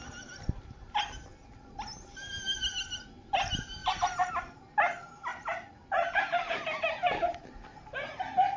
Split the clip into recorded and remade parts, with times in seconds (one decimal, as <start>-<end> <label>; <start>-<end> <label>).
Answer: 0.0-3.8 recorded; 3.8-4.3 remade; 4.3-5.3 recorded; 5.3-6.1 remade; 6.1-8.6 recorded